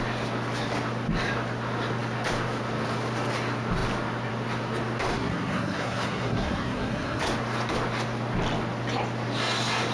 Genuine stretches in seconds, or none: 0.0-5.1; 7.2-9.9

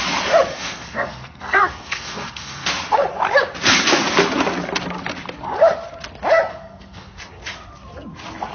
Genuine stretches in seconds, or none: 0.0-0.5; 2.7-6.5; 7.2-8.5

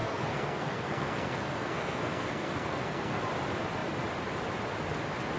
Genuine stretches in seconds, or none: 3.2-5.4

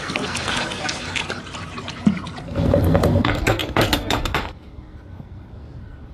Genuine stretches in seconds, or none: 1.2-2.4

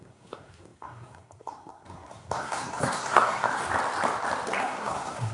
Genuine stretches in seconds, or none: 3.6-4.6

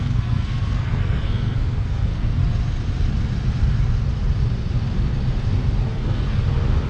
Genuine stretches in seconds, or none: 2.4-5.9; 6.4-6.9